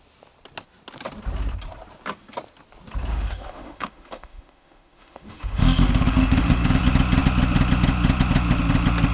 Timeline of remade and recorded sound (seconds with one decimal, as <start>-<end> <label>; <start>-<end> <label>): 0.0-3.1 recorded; 3.1-6.8 remade; 6.8-9.1 recorded